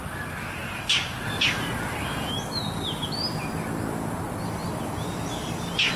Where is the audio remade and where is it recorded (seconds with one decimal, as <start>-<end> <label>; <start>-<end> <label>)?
0.0-6.0 recorded